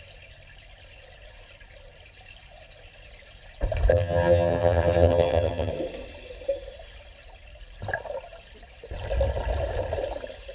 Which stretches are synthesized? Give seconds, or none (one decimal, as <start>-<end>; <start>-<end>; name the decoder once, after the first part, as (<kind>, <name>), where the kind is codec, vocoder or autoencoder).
3.9-5.7 (vocoder, HiFi-GAN)

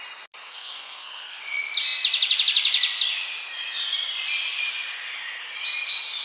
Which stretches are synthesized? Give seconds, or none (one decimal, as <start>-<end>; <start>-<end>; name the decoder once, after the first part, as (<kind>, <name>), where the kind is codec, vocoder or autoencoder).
0.4-1.4 (codec, SNAC)

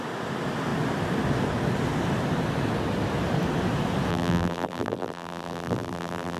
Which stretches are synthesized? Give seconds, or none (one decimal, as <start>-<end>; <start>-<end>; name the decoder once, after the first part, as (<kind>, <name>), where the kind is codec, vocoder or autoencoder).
4.1-6.4 (vocoder, BigVGAN v2)

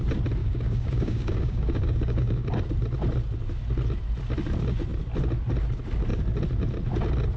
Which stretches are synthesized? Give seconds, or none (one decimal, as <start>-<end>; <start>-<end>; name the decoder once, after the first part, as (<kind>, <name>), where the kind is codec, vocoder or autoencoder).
0.4-2.5 (codec, DAC)

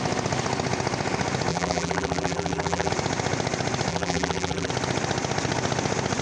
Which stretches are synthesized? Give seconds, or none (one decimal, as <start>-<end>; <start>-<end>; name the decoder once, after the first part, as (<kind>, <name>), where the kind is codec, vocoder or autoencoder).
1.5-2.9 (vocoder, BigVGAN v2); 3.9-4.7